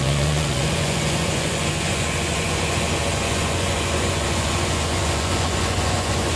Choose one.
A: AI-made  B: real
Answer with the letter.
A